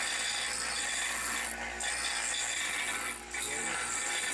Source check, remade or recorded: recorded